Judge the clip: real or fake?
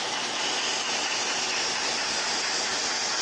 real